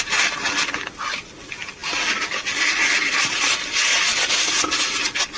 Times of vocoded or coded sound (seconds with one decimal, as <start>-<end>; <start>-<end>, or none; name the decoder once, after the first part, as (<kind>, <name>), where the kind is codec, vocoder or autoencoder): none